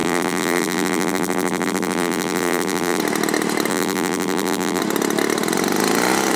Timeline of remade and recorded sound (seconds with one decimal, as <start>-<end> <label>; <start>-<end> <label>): 0.0-3.0 remade; 3.0-3.7 recorded; 3.7-4.8 remade; 4.8-6.4 recorded